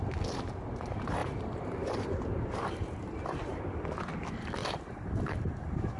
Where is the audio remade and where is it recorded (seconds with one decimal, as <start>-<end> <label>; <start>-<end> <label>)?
0.0-1.2 recorded; 1.2-3.6 remade; 3.6-4.6 recorded; 4.6-5.5 remade; 5.5-6.0 recorded